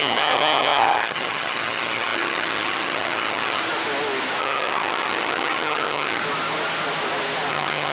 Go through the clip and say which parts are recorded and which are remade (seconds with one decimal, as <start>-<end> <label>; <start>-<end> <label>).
0.0-3.6 remade; 3.6-4.4 recorded; 4.4-6.2 remade; 6.2-7.5 recorded; 7.5-7.9 remade